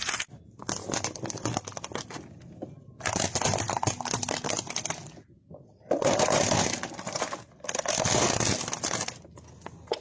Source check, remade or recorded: recorded